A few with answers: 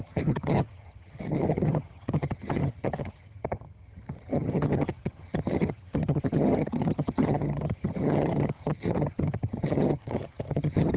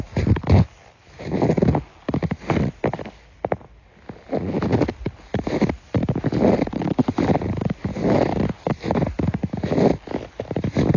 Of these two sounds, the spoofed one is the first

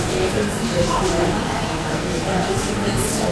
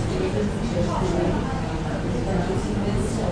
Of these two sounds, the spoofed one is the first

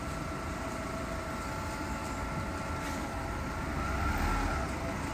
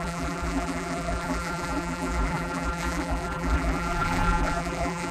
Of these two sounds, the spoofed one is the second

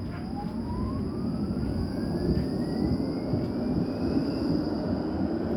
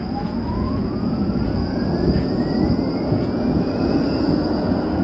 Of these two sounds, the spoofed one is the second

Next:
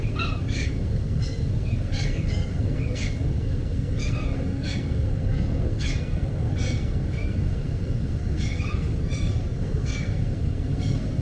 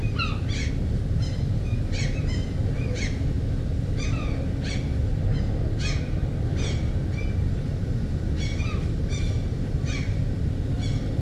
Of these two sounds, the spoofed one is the first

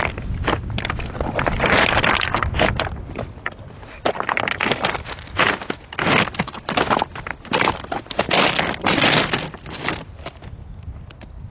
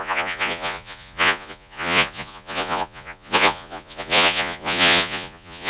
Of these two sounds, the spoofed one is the second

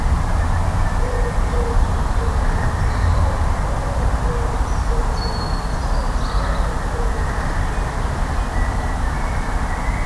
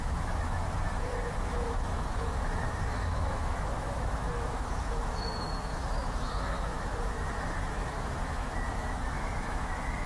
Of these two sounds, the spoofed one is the second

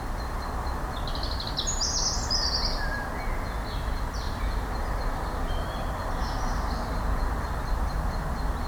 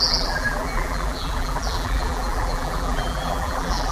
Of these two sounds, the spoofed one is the second